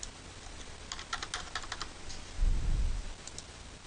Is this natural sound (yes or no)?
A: yes